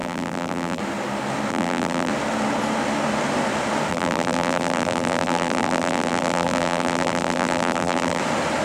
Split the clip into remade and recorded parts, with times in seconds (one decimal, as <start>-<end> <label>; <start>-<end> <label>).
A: 0.0-0.8 remade; 0.8-1.5 recorded; 1.5-2.1 remade; 2.1-3.9 recorded; 3.9-8.2 remade; 8.2-8.6 recorded